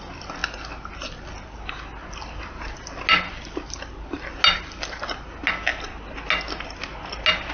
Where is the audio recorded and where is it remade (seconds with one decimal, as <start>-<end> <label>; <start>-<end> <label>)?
0.0-7.5 recorded